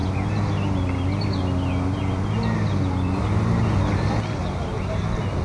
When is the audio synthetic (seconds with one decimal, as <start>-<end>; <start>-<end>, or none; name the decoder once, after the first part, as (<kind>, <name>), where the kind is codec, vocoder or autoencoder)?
4.4-5.0 (vocoder, BigVGAN v2)